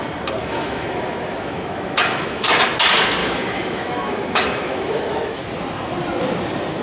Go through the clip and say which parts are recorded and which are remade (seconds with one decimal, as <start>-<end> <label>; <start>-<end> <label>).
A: 0.0-0.4 recorded; 0.4-2.6 remade; 2.6-3.2 recorded; 3.2-5.4 remade; 5.4-6.8 recorded